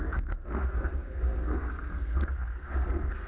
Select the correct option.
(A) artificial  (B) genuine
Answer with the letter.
A